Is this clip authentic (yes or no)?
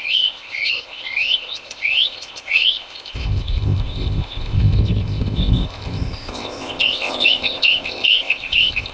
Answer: no